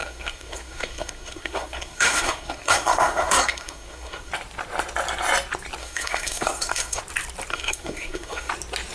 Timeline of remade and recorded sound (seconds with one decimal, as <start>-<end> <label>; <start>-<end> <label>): 0.0-4.3 remade; 4.3-5.8 recorded; 5.8-7.0 remade; 7.0-7.5 recorded; 7.5-8.5 remade; 8.5-8.9 recorded